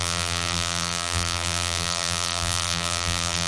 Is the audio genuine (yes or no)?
no